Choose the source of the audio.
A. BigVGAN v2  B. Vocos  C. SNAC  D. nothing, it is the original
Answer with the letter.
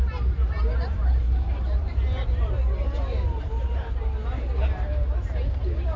A